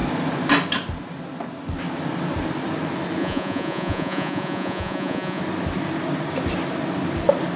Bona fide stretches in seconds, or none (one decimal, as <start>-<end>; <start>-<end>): 0.0-3.2; 5.4-7.6